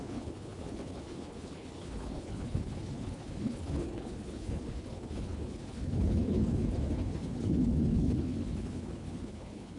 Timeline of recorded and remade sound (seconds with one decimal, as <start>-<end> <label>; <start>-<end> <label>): 0.0-9.8 remade